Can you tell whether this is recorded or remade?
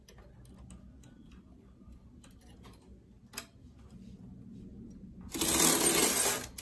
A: recorded